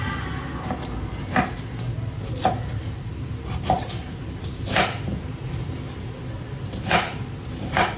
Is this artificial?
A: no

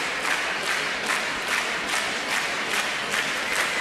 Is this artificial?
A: no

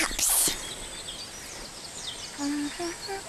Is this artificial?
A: no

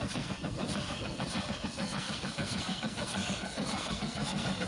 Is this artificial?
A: yes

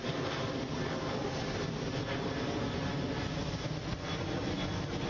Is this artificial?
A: no